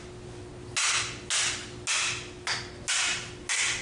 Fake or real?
real